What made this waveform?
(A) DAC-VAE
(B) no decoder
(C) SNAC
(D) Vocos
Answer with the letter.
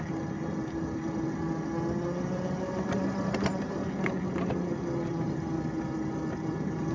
B